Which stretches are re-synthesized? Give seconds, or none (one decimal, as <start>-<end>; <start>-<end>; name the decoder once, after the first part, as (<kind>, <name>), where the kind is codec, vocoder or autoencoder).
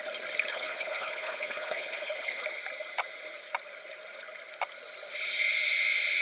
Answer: 0.5-2.4 (codec, HILCodec)